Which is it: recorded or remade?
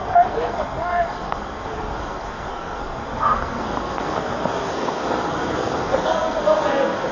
remade